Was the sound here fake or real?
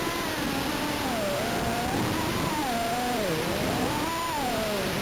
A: fake